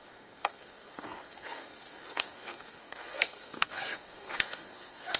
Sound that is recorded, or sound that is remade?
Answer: remade